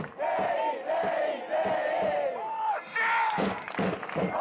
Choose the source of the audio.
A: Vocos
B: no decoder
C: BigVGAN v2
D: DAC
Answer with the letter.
B